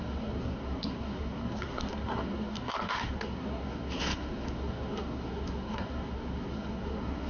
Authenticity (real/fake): fake